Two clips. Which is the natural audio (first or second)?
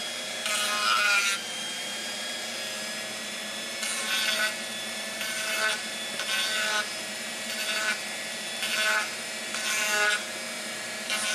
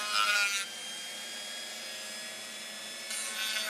second